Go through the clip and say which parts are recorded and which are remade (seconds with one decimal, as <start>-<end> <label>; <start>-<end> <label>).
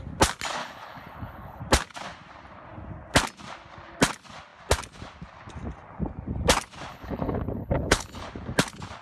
0.0-0.6 recorded; 0.6-1.6 remade; 1.6-6.9 recorded; 6.9-8.2 remade; 8.2-9.0 recorded